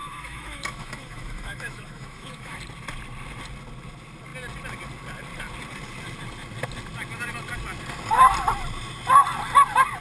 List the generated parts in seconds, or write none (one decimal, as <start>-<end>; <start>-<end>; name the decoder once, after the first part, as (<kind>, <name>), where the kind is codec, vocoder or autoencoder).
0.0-2.6 (autoencoder, DAC-VAE)